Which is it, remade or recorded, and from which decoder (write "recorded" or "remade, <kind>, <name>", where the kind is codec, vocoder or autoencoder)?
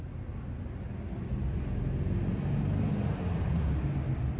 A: recorded